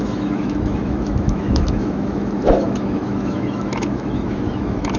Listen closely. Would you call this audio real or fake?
fake